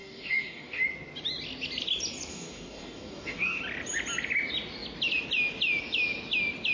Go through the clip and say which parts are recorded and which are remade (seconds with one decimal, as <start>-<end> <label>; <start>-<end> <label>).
0.0-0.8 remade; 0.8-2.3 recorded; 2.3-3.6 remade; 3.6-6.7 recorded